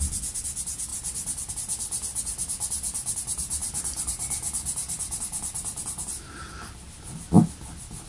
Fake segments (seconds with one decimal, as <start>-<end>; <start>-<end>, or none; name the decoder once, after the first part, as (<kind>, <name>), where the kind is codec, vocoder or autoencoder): 0.9-1.5 (vocoder, BigVGAN v2)